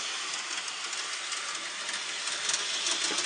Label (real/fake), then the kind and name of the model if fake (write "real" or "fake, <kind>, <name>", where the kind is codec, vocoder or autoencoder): real